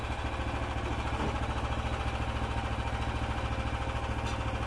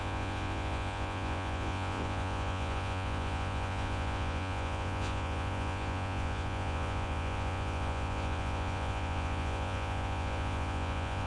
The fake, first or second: second